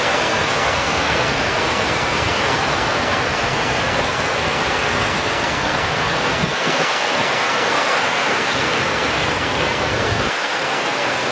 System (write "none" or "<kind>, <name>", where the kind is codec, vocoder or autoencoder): codec, SNAC